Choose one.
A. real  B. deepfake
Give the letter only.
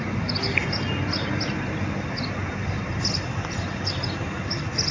A